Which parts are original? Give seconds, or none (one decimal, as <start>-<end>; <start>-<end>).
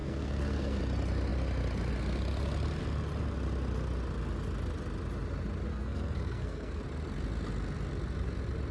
0.8-5.7; 6.8-8.7